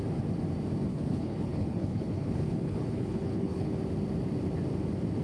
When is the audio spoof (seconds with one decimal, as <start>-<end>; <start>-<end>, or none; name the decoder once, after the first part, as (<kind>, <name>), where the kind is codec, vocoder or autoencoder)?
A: 0.9-3.7 (codec, HILCodec)